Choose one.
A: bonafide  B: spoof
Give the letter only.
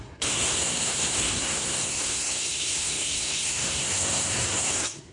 B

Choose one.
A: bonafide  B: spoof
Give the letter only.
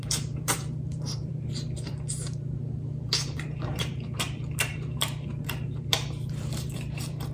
B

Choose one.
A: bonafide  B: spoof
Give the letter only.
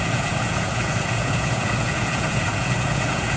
B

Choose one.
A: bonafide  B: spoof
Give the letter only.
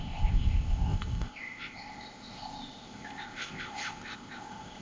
B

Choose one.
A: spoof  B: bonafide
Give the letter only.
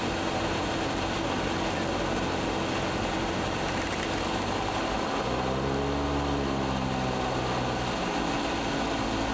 B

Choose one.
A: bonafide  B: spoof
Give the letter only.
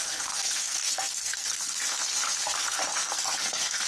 B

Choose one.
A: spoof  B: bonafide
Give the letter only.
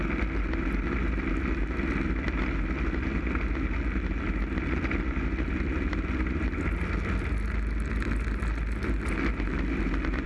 B